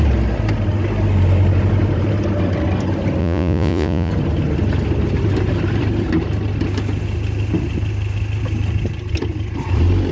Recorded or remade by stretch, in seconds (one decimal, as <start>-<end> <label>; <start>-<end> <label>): 0.0-3.2 recorded; 3.2-4.1 remade; 4.1-10.1 recorded